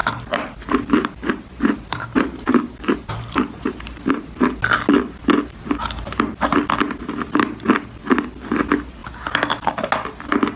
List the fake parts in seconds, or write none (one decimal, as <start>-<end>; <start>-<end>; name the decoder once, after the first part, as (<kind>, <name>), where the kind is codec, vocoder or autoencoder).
0.0-4.6 (vocoder, BigVGAN v2)